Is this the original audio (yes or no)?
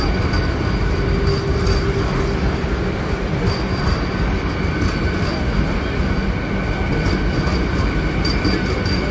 yes